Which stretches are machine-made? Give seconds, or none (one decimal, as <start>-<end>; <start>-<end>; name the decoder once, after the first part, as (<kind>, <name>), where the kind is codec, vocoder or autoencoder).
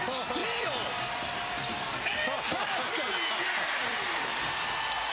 0.4-2.0 (vocoder, BigVGAN v2); 3.8-5.1